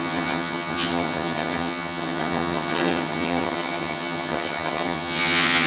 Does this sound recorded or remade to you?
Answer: remade